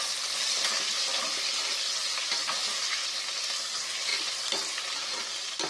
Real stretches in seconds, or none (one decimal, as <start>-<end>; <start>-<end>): 0.0-1.1; 2.1-3.0; 3.6-4.1; 4.8-5.7